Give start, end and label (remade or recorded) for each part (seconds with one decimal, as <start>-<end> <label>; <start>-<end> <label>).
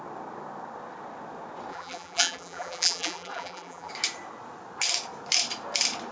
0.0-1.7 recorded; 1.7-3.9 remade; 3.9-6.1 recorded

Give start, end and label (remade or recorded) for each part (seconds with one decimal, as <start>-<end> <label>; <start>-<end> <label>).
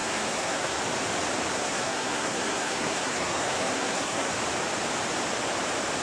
0.0-0.8 remade; 0.8-1.5 recorded; 1.5-4.3 remade; 4.3-6.0 recorded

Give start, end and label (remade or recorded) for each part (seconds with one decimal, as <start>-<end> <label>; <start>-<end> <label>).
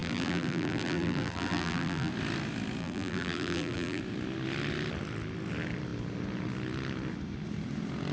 0.0-2.1 remade; 2.1-2.8 recorded; 2.8-4.0 remade; 4.0-8.1 recorded